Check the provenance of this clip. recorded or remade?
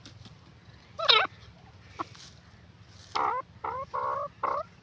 recorded